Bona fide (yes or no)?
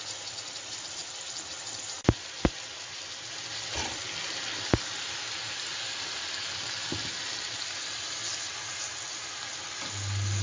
yes